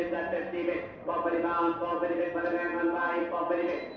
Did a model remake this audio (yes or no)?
no